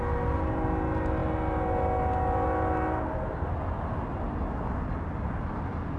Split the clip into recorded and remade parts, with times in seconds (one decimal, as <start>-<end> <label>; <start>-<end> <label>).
0.0-6.0 recorded